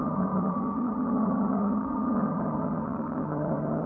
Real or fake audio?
fake